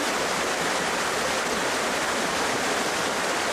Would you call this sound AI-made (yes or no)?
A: no